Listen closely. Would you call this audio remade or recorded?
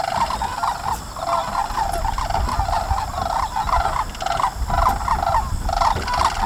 recorded